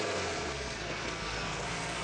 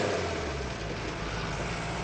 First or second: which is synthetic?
first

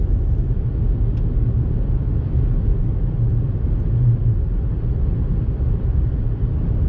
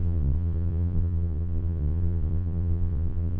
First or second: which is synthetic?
second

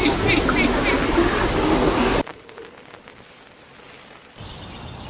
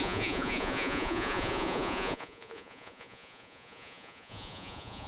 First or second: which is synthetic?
second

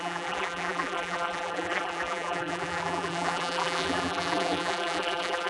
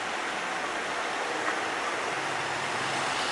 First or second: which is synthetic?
first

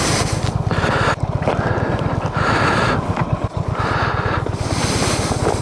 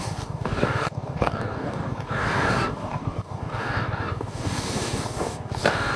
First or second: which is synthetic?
second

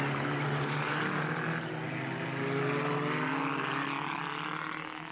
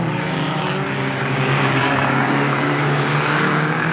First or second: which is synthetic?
second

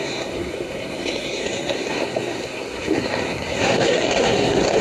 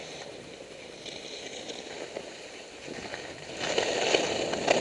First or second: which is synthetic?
first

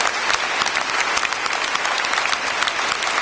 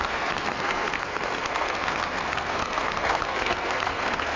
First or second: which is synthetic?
second